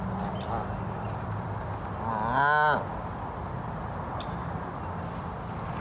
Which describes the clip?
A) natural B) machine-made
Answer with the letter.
A